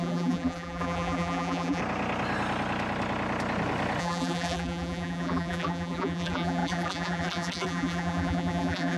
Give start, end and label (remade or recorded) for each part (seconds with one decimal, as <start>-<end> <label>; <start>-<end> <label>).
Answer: 0.0-1.8 remade; 1.8-4.0 recorded; 4.0-9.0 remade